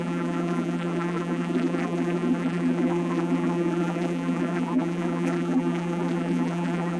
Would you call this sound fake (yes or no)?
yes